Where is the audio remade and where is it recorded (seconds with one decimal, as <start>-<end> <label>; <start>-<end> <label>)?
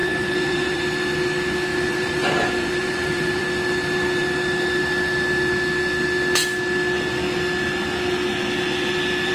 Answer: 0.0-0.8 remade; 0.8-1.7 recorded; 1.7-3.4 remade; 3.4-9.3 recorded